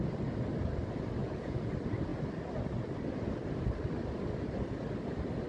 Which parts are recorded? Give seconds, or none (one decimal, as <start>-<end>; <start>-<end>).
0.0-1.2; 1.7-5.5